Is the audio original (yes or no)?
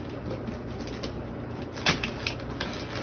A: yes